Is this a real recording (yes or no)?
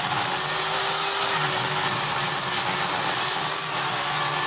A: yes